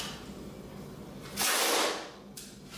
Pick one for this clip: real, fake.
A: real